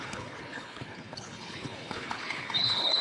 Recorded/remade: remade